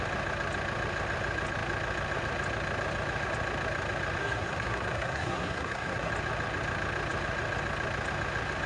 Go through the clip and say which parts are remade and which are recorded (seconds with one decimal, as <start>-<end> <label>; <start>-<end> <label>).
0.0-4.2 recorded; 4.2-6.1 remade; 6.1-8.7 recorded

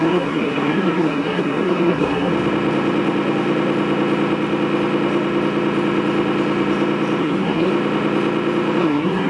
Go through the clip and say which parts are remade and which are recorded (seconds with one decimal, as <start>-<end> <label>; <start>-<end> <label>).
0.0-2.3 remade; 2.3-7.2 recorded; 7.2-7.7 remade; 7.7-8.8 recorded; 8.8-9.3 remade

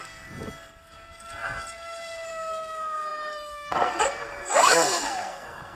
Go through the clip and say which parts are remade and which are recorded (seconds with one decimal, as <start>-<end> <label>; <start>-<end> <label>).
0.0-5.8 remade